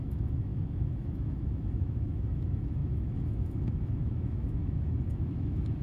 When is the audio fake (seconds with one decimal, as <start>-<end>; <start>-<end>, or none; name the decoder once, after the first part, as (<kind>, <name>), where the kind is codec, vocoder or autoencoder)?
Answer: 0.0-5.8 (autoencoder, DAC-VAE)

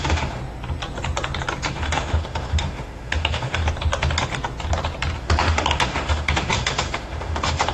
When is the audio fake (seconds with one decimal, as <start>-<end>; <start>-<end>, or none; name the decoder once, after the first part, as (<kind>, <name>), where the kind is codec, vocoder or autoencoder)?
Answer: 0.0-0.4 (autoencoder, DAC-VAE); 1.7-3.6; 5.2-7.7

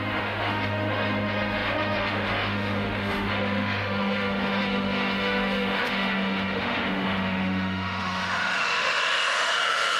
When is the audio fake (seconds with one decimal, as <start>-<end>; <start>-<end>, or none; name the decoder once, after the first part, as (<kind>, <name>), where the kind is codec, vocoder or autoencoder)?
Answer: 0.0-10.0 (autoencoder, DAC-VAE)

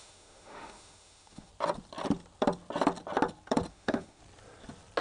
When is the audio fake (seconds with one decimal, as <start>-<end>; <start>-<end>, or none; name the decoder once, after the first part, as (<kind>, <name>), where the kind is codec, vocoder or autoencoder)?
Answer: 0.0-1.5 (autoencoder, DAC-VAE); 3.7-4.2

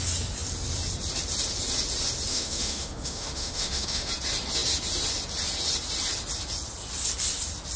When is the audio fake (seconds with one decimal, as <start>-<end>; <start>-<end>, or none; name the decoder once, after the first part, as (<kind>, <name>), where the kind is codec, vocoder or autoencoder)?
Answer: 2.3-4.1 (autoencoder, DAC-VAE)

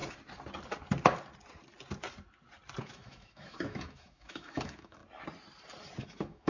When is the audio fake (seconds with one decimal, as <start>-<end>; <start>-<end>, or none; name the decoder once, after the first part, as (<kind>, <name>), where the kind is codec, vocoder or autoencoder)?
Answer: 2.8-5.0 (autoencoder, DAC-VAE); 6.0-6.5

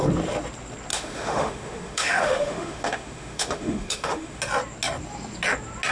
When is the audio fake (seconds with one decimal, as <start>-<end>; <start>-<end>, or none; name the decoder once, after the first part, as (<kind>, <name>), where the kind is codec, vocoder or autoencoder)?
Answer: 0.9-4.4 (autoencoder, DAC-VAE)

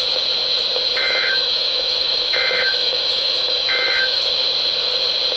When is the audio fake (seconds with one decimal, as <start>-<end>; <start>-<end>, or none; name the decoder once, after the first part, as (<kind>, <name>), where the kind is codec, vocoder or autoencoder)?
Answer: 1.0-4.2 (autoencoder, DAC-VAE)